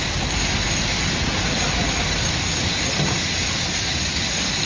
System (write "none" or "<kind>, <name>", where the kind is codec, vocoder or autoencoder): none